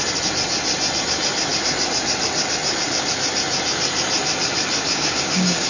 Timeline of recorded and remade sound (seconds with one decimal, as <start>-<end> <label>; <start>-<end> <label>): 0.0-4.9 recorded; 4.9-5.7 remade

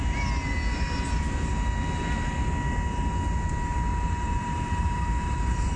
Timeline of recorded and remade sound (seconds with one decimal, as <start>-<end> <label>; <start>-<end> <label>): 0.0-3.9 recorded; 3.9-5.8 remade

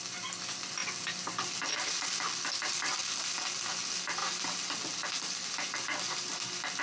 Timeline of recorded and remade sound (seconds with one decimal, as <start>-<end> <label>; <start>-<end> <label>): 0.0-6.8 recorded

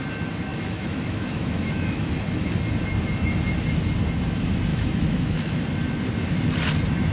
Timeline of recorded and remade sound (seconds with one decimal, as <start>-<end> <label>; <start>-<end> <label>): 0.0-0.5 recorded; 0.5-2.1 remade; 2.1-4.7 recorded; 4.7-5.5 remade; 5.5-7.1 recorded